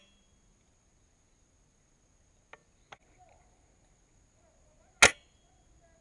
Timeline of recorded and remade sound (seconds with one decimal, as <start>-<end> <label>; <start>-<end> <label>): 0.0-6.0 recorded